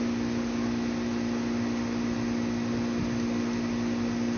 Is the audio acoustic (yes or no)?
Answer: yes